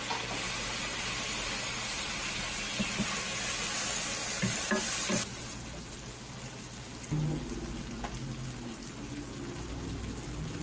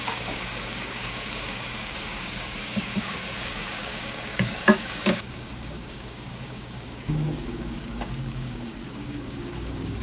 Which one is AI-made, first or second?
second